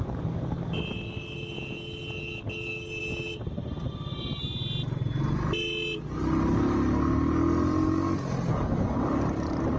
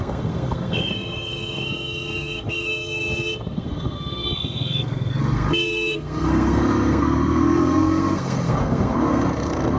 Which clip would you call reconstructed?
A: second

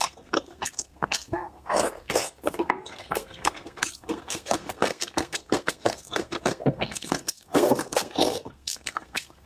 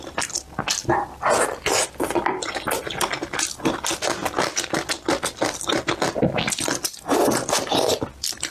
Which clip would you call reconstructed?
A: first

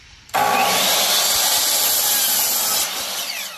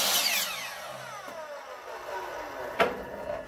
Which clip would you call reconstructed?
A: first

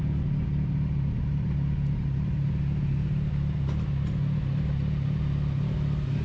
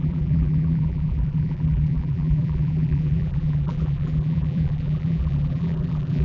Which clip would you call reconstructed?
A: second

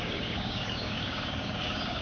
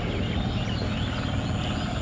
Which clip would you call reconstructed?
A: first